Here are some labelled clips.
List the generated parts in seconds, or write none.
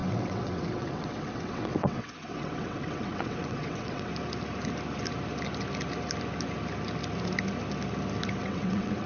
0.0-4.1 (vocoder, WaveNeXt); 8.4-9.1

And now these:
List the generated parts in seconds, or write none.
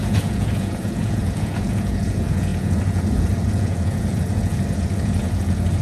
0.0-5.8 (vocoder, Vocos)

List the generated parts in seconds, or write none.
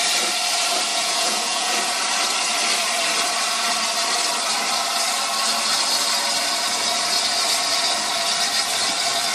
0.9-1.7 (vocoder, Vocos)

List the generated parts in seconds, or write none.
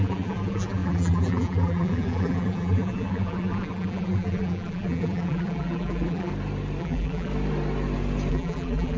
0.0-6.3 (vocoder, BigVGAN v2); 6.8-7.3; 8.3-9.0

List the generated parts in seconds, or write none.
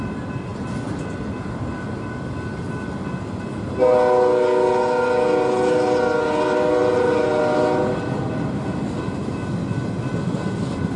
none